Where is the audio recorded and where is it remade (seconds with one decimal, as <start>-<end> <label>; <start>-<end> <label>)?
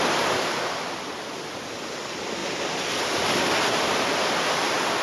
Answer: 0.0-5.0 recorded